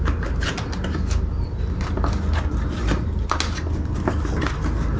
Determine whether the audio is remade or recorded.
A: recorded